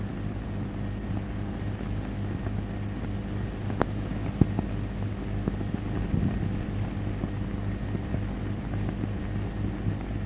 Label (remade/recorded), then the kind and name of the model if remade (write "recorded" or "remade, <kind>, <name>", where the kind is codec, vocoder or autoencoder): recorded